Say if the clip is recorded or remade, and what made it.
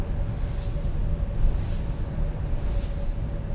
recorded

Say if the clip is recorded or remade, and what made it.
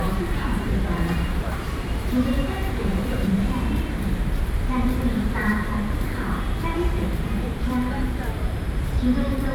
remade, vocoder, BigVGAN v2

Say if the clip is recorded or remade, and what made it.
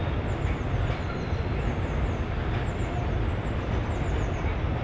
recorded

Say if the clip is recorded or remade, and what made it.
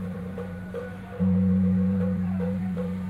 remade, vocoder, BigVGAN v2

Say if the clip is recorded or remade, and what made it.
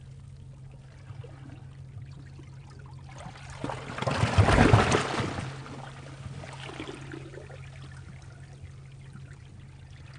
recorded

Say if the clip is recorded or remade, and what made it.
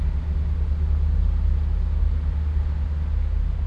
recorded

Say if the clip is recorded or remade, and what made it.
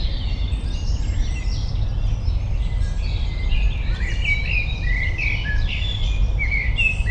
remade, vocoder, BigVGAN v2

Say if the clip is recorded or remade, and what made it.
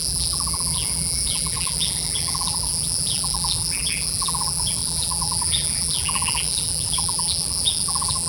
remade, vocoder, BigVGAN v2